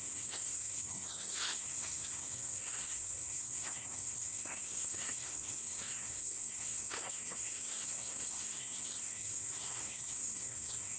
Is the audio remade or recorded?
remade